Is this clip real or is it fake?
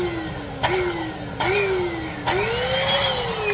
real